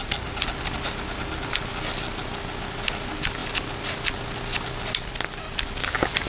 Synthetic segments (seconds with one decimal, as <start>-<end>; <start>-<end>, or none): none